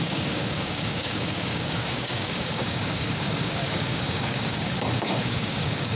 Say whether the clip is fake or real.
fake